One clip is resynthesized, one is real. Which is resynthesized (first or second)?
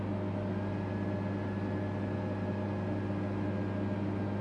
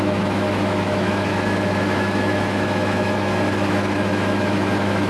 second